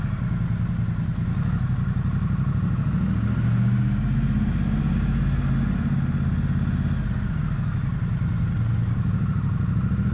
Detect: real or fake real